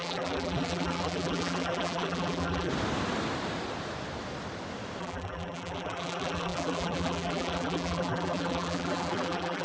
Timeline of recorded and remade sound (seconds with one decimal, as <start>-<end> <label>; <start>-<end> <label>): 0.0-2.7 remade; 2.7-5.0 recorded; 5.0-9.6 remade